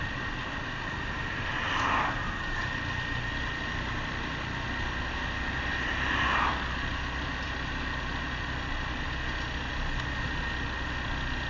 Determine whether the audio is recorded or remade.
recorded